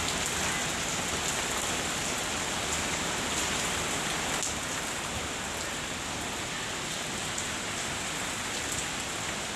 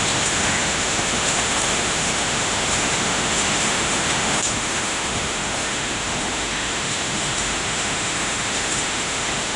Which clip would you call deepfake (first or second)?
second